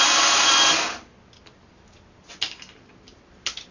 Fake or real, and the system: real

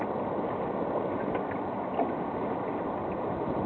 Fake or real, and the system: real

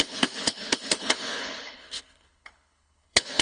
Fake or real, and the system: fake, codec, HILCodec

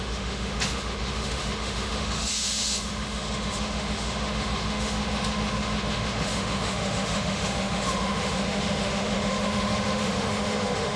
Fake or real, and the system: fake, autoencoder, DAC-VAE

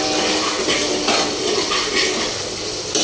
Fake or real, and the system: real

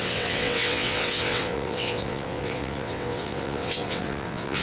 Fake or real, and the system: fake, vocoder, WaveNeXt